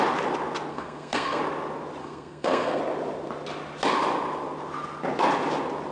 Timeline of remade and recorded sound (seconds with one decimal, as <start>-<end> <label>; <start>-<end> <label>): 0.0-0.7 recorded; 0.7-1.4 remade; 1.4-2.0 recorded; 2.0-2.8 remade; 2.8-5.9 recorded